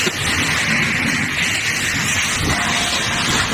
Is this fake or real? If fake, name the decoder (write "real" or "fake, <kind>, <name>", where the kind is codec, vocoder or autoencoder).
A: real